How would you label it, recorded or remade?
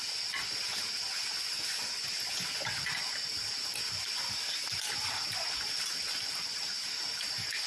recorded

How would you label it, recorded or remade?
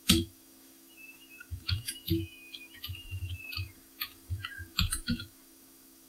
remade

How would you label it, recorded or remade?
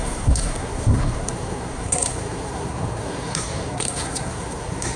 remade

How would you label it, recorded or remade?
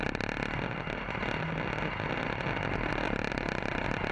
recorded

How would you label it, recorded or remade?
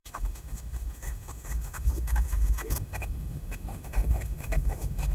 remade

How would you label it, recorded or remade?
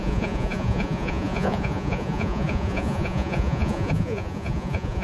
remade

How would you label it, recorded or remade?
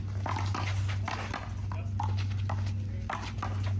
recorded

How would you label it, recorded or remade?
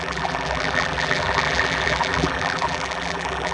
remade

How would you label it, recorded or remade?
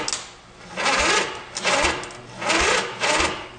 recorded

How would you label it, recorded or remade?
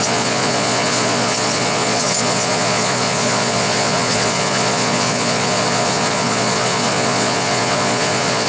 remade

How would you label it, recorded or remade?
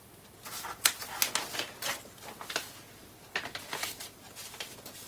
recorded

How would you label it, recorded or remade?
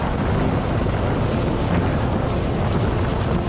recorded